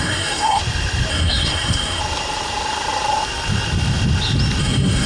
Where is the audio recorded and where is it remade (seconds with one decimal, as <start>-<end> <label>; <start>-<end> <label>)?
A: 0.0-0.6 remade; 0.6-1.1 recorded; 1.1-2.0 remade; 2.0-4.6 recorded; 4.6-5.1 remade